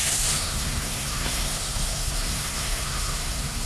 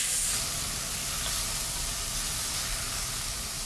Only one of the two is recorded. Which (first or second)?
second